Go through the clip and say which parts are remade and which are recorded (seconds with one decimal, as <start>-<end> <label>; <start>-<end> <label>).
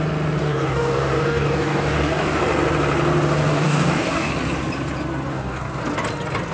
0.0-0.4 recorded; 0.4-2.4 remade; 2.4-3.5 recorded; 3.5-4.3 remade; 4.3-5.3 recorded; 5.3-5.8 remade; 5.8-6.5 recorded